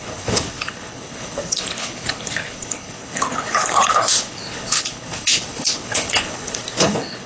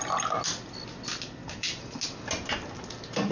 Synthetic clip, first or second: first